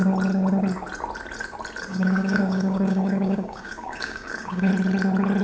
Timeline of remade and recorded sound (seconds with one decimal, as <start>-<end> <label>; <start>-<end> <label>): 0.0-1.9 recorded; 1.9-4.7 remade; 4.7-5.4 recorded